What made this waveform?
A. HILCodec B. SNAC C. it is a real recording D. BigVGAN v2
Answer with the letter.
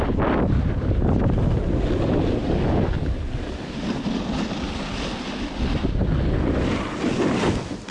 C